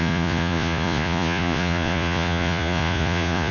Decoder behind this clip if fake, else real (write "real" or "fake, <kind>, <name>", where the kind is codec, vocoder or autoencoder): fake, vocoder, Vocos